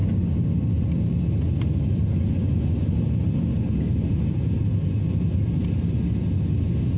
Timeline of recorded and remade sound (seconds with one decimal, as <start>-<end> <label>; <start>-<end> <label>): 0.0-7.0 recorded